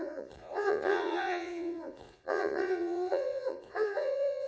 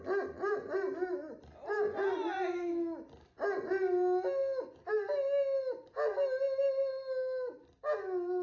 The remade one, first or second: first